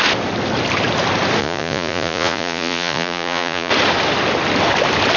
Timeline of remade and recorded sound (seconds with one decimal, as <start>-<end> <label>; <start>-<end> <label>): 0.0-1.4 recorded; 1.4-3.7 remade; 3.7-5.2 recorded